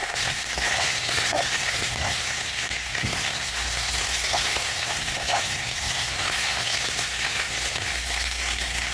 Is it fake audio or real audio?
fake